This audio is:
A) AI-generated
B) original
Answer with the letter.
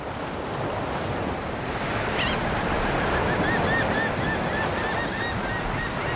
B